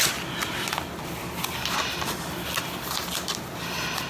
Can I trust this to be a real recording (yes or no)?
yes